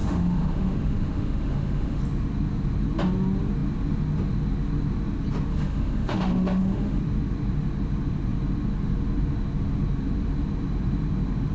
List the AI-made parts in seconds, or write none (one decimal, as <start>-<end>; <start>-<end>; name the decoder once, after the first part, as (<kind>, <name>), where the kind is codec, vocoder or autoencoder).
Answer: 0.0-2.0 (autoencoder, DAC-VAE); 5.5-7.0